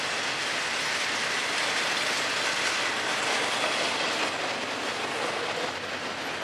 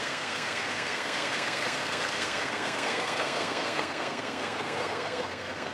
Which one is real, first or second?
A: first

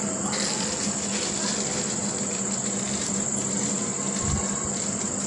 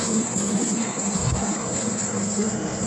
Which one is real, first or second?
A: first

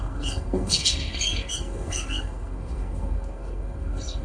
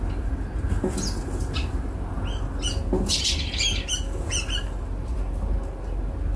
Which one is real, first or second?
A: second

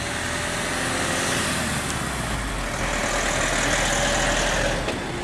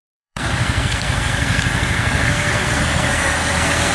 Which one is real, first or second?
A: first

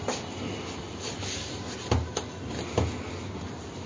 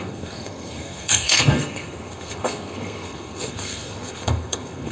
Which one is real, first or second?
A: first